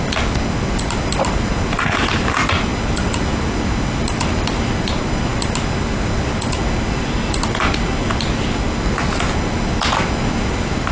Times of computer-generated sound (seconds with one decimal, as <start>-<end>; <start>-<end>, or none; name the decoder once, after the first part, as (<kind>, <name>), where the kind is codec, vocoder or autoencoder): none